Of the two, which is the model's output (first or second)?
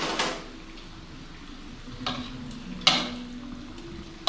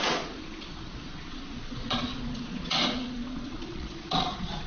second